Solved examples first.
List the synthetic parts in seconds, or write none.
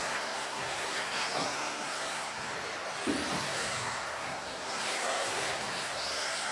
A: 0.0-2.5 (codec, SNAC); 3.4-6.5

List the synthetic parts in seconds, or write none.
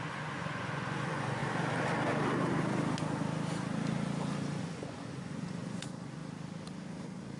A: 0.0-1.4 (vocoder, Vocos); 4.6-6.2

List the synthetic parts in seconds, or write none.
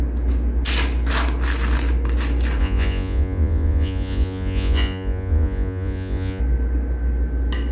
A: 2.6-6.4 (vocoder, Vocos)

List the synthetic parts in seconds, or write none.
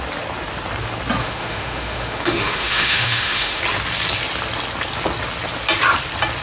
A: 1.2-3.6 (autoencoder, DAC-VAE)